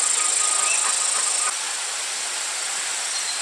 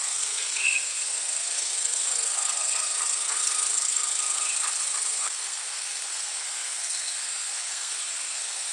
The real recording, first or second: first